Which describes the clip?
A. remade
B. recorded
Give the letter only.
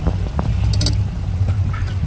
B